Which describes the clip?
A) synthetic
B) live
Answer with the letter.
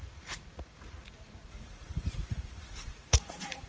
A